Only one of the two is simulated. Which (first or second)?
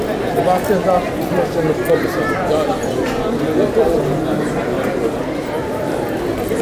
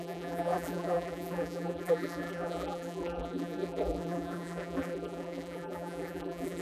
second